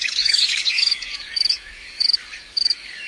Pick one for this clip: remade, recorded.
remade